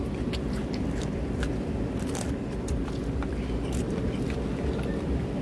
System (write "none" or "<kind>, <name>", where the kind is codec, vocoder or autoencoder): vocoder, BigVGAN v2